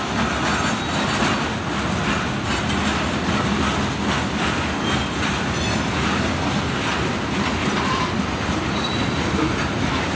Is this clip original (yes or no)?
yes